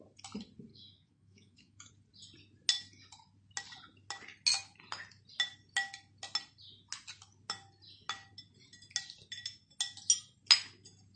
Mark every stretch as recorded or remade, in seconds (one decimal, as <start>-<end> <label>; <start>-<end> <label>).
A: 0.0-0.7 recorded; 0.7-1.9 remade; 1.9-11.2 recorded